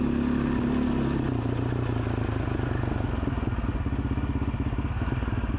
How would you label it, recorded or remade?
recorded